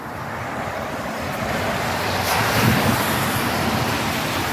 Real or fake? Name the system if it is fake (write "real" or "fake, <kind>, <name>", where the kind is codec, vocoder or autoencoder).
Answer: real